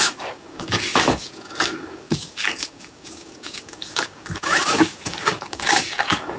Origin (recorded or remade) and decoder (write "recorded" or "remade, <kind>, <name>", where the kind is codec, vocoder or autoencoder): remade, codec, DAC